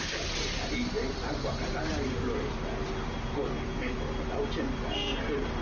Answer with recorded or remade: recorded